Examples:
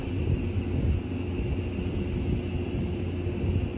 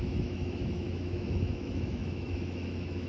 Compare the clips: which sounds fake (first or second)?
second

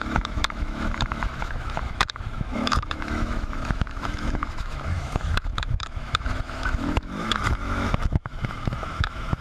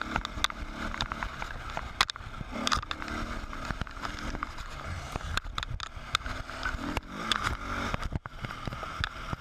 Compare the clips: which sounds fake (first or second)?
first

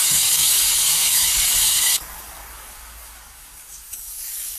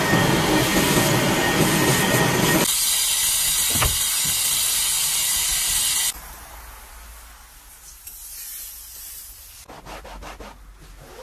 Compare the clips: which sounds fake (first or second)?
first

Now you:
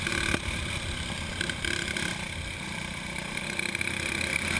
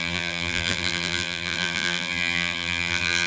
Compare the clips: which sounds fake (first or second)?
second